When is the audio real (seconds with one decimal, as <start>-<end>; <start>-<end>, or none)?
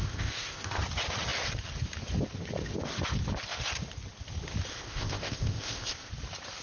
0.8-4.7; 6.1-6.6